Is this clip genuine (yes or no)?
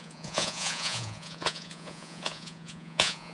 no